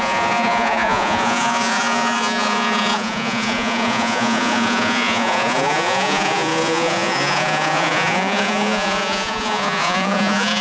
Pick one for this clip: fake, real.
fake